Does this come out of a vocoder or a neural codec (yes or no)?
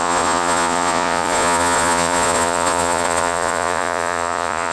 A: yes